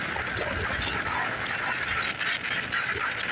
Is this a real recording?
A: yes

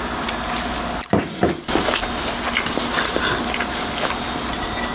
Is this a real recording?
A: yes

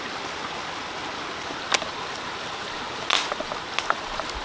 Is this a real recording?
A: yes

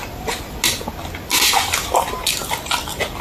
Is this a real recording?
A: yes